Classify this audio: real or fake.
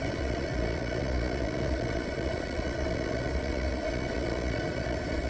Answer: fake